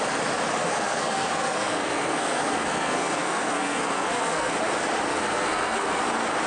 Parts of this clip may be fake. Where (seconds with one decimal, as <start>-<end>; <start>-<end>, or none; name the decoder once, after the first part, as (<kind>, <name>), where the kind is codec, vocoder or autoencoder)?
0.6-4.5 (codec, SNAC); 5.1-6.0

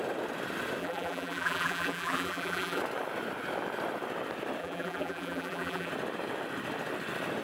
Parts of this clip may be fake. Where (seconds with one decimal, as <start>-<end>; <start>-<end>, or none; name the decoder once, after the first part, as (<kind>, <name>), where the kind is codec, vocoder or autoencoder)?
0.8-2.8 (vocoder, BigVGAN v2); 4.6-5.9

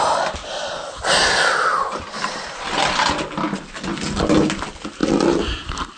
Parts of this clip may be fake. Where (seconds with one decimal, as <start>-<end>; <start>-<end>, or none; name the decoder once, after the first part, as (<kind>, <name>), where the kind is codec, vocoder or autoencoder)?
1.7-2.8 (vocoder, BigVGAN v2)

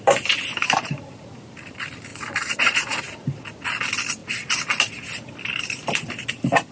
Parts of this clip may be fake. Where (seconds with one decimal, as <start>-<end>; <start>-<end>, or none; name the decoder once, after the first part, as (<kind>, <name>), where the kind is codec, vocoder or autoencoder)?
2.1-3.0 (vocoder, Vocos)

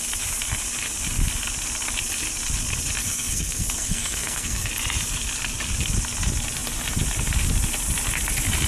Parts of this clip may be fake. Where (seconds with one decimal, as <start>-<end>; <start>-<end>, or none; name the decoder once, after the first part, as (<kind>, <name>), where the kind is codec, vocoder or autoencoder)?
3.0-4.7 (codec, SNAC)

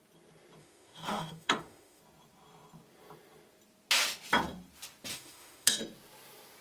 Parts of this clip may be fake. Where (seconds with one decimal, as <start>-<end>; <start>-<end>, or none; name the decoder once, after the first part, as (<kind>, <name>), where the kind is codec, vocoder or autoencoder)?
0.6-2.0 (autoencoder, DAC-VAE); 5.1-5.8

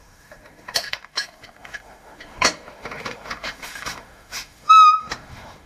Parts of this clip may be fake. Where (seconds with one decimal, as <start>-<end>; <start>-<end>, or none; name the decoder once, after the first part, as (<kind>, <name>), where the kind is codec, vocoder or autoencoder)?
0.0-5.7 (autoencoder, DAC-VAE)

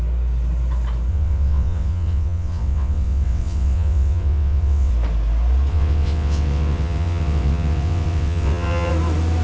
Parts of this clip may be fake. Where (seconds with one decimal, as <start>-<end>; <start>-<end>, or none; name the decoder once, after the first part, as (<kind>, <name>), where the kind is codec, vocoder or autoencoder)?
1.1-4.9 (vocoder, WaveNeXt); 5.7-8.9